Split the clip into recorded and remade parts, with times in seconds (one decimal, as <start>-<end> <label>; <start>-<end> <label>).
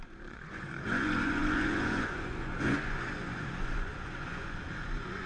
0.0-5.3 remade